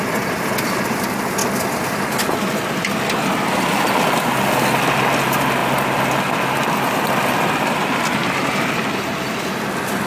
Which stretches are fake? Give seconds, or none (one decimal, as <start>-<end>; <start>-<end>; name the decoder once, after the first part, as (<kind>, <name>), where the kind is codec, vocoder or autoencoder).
none